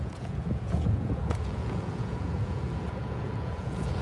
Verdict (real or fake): fake